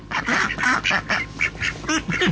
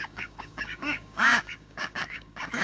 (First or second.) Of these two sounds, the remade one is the second